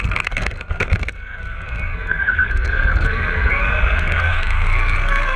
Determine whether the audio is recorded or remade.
remade